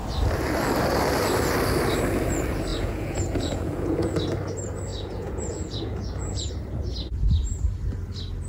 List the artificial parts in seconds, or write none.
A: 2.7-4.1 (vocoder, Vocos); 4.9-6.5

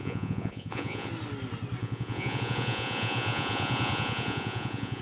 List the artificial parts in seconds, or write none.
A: 0.0-1.1 (vocoder, Vocos); 1.8-5.0

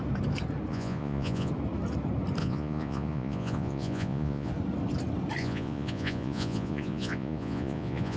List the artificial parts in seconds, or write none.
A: 0.7-1.5 (vocoder, Vocos); 2.4-4.5; 5.4-8.2

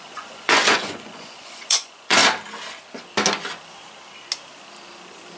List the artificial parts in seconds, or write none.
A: 0.0-2.2 (vocoder, Vocos)

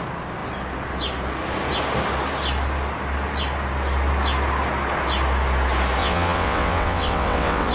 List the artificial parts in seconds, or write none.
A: 6.0-7.7 (vocoder, WaveNeXt)